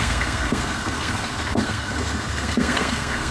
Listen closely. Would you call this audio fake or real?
fake